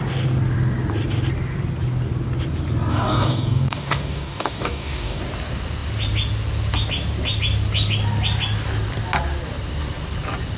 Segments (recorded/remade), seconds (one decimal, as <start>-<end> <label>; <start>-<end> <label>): 0.0-2.9 recorded; 2.9-5.2 remade; 5.2-10.6 recorded